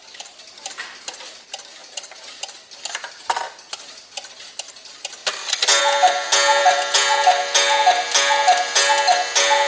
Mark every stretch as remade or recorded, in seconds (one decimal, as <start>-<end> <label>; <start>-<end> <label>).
0.0-9.7 recorded